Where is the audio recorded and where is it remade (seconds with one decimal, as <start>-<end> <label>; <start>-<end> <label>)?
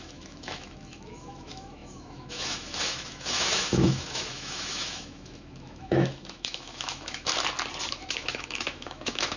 0.0-7.3 remade; 7.3-7.9 recorded; 7.9-9.4 remade